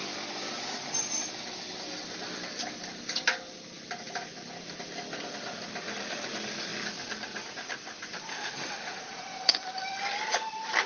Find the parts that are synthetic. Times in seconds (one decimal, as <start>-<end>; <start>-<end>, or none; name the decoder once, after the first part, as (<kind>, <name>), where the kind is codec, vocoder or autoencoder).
8.3-9.0 (autoencoder, DAC-VAE)